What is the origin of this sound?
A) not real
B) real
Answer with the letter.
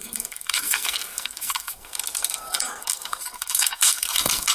A